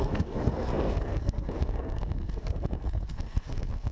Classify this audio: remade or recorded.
remade